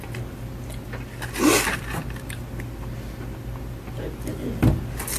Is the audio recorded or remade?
recorded